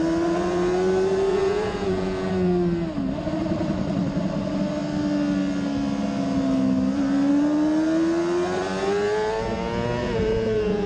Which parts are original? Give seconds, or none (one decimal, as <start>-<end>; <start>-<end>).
0.0-1.3; 2.3-10.0